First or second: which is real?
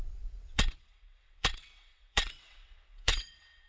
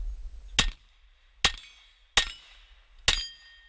second